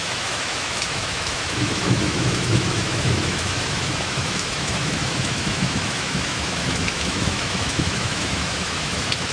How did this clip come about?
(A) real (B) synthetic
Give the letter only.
B